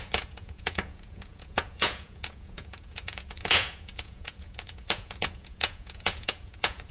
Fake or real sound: fake